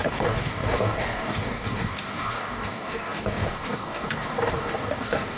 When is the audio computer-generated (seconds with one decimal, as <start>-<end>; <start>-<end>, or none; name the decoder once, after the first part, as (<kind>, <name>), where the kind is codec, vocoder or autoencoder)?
0.0-5.4 (codec, DAC)